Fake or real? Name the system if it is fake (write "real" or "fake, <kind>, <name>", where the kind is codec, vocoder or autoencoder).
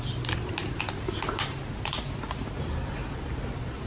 real